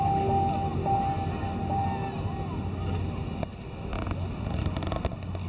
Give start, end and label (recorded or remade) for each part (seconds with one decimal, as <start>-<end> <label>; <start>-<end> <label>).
0.0-5.5 recorded